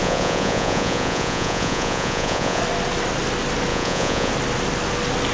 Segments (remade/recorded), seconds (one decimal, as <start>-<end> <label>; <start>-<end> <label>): 0.0-2.6 remade; 2.6-3.7 recorded; 3.7-4.3 remade; 4.3-5.3 recorded

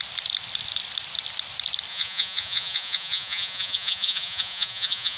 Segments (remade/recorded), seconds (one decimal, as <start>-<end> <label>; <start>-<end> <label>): 0.0-1.9 recorded; 1.9-5.2 remade

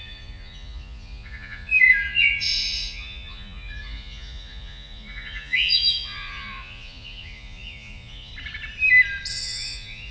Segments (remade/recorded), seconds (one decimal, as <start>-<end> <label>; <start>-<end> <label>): 0.0-8.3 remade; 8.3-9.3 recorded; 9.3-10.1 remade

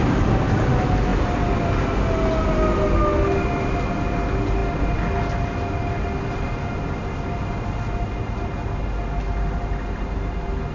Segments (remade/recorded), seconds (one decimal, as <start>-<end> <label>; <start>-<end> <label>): 0.0-10.7 recorded

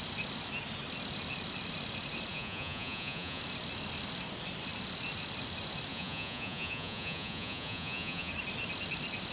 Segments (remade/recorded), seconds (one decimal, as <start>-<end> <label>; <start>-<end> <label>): 0.0-2.3 recorded; 2.3-3.4 remade; 3.4-5.9 recorded; 5.9-8.3 remade; 8.3-9.3 recorded

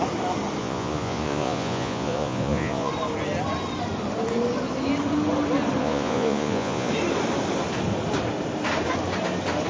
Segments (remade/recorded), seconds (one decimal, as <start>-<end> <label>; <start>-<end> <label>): 0.0-0.6 recorded; 0.6-2.9 remade; 2.9-5.8 recorded; 5.8-6.9 remade; 6.9-9.7 recorded

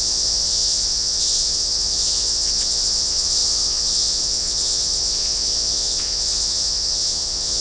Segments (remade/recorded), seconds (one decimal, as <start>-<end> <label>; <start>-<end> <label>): 0.0-7.6 remade

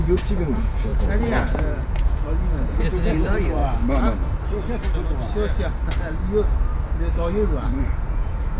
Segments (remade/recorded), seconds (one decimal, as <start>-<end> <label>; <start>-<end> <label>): 0.0-3.6 remade; 3.6-7.8 recorded; 7.8-8.6 remade